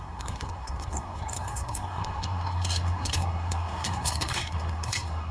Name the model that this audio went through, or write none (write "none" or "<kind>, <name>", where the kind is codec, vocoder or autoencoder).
codec, SNAC